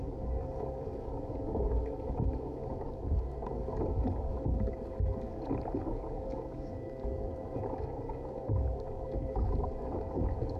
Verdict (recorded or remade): remade